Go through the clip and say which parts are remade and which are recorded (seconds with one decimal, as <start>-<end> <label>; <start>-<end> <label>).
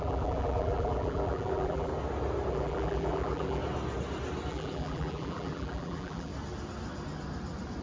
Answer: 0.0-1.9 remade; 1.9-2.5 recorded; 2.5-3.6 remade; 3.6-4.5 recorded; 4.5-6.3 remade; 6.3-7.8 recorded